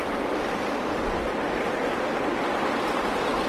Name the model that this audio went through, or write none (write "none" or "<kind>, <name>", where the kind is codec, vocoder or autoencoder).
none